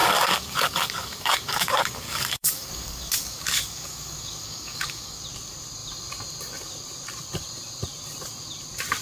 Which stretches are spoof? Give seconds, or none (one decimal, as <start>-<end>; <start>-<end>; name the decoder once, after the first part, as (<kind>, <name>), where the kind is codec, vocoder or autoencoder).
0.0-5.2 (codec, DAC)